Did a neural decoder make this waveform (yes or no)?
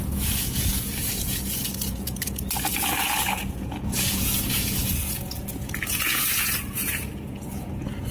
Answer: yes